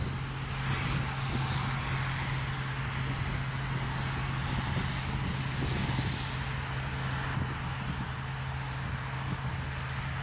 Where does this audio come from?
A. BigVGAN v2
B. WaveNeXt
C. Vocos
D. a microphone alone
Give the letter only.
D